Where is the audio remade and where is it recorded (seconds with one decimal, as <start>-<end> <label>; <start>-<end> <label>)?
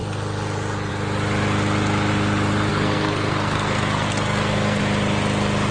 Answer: 0.0-2.7 recorded; 2.7-4.8 remade; 4.8-5.7 recorded